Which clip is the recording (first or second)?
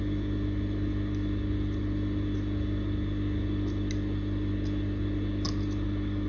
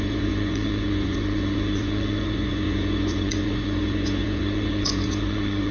first